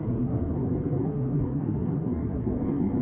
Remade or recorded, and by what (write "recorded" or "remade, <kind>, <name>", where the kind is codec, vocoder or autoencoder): remade, codec, SNAC